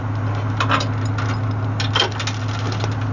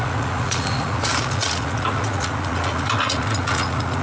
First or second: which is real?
first